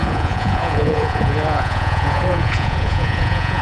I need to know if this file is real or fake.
fake